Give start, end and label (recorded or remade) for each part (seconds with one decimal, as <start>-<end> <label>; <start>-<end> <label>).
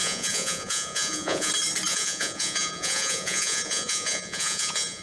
0.0-1.5 remade; 1.5-1.9 recorded; 1.9-5.0 remade